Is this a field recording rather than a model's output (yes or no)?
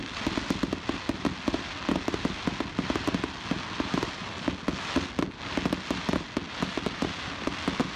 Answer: yes